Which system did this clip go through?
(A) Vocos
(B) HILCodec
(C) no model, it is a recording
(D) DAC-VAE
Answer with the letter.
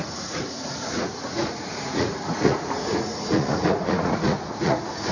A